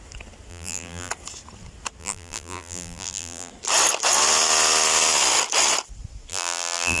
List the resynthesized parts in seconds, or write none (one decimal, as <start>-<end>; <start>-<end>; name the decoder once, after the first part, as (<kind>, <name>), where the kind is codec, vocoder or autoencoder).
0.5-1.1 (vocoder, BigVGAN v2); 2.0-3.5; 6.3-7.0